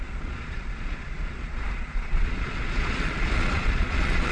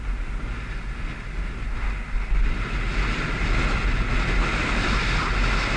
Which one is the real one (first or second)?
second